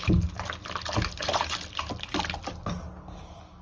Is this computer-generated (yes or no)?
no